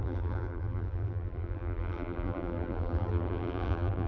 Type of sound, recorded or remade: remade